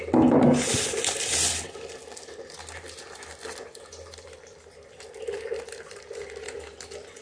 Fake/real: real